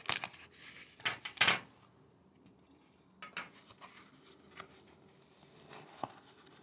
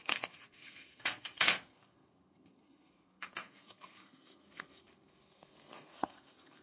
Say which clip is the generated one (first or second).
second